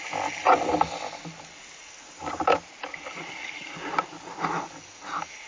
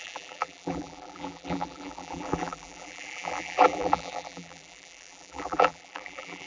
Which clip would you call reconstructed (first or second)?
second